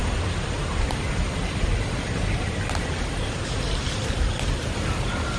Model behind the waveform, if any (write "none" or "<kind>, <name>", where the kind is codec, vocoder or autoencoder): none